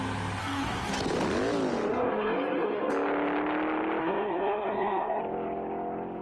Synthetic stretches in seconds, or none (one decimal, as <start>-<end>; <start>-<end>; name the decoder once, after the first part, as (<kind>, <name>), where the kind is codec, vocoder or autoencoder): 0.4-0.9 (codec, SNAC); 1.9-2.9; 4.0-5.2